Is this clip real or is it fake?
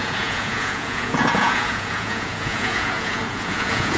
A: fake